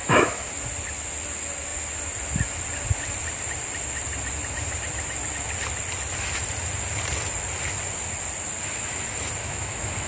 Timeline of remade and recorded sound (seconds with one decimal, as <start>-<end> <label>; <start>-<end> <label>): 0.0-0.5 remade; 0.5-9.4 recorded; 9.4-10.1 remade